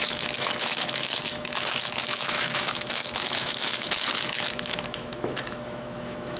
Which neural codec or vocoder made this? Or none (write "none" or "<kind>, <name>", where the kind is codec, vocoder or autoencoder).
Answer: autoencoder, DAC-VAE